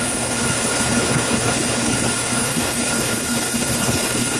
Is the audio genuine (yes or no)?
no